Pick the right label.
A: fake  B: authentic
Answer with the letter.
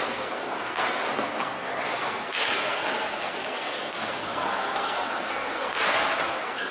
A